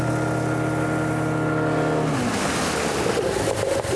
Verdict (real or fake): real